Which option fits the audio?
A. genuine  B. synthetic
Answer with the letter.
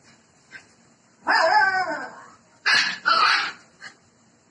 A